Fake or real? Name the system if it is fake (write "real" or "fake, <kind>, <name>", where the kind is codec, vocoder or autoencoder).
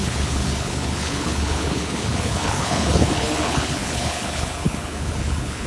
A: fake, codec, HILCodec